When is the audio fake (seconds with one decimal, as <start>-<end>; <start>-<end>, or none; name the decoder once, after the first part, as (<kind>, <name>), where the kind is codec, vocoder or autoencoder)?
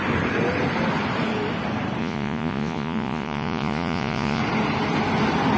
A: 2.0-4.4 (vocoder, Vocos)